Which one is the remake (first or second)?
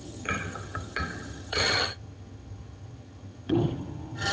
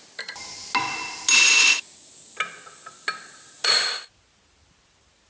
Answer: first